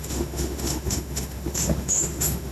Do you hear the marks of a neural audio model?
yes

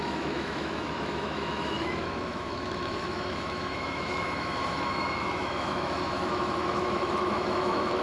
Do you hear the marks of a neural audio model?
yes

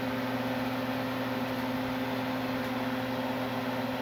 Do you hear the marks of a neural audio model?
no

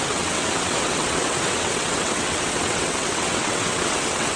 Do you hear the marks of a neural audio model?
yes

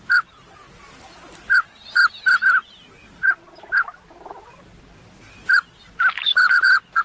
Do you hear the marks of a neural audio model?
no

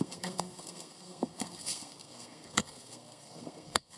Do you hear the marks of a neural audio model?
yes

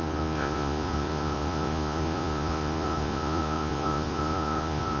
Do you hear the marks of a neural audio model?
yes